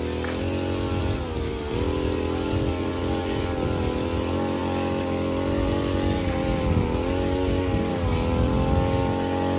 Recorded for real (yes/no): yes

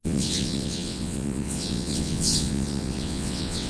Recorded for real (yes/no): no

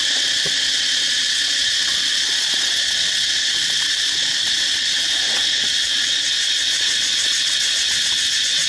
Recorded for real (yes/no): no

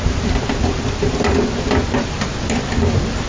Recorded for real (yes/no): yes